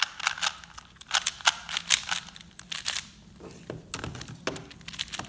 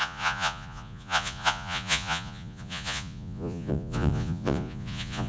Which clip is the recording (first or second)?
first